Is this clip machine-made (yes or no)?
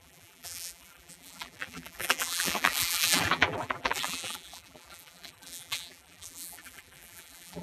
yes